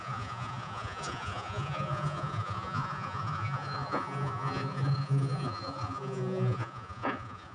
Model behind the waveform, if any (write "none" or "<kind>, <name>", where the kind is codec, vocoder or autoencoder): vocoder, Vocos